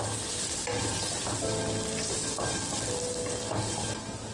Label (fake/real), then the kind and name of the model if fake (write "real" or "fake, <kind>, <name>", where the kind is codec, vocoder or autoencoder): real